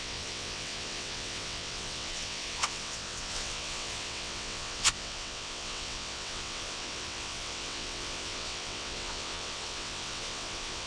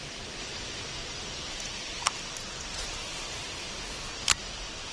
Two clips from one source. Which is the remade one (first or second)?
first